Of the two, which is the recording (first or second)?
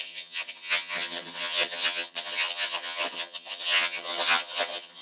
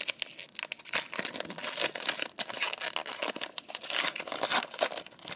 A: second